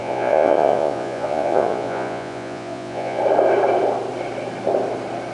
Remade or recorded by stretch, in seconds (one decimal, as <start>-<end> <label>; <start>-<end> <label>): 0.0-3.2 remade; 3.2-5.3 recorded